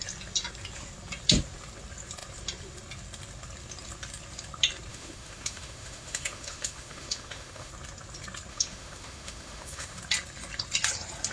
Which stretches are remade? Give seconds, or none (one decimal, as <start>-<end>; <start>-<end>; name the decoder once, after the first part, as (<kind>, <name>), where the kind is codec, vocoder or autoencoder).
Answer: 4.9-7.7 (autoencoder, DAC-VAE); 8.5-10.0